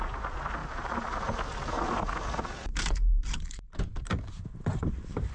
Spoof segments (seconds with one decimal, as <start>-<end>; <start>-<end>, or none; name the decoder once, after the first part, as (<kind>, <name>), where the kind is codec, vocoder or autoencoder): 0.6-1.2 (vocoder, BigVGAN v2); 2.7-5.3